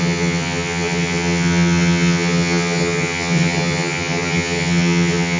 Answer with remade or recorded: remade